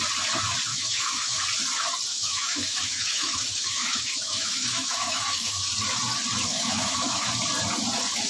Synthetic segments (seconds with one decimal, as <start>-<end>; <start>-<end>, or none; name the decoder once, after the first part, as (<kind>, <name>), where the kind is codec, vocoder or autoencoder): 0.7-1.4 (autoencoder, DAC-VAE); 2.1-5.7; 6.5-7.3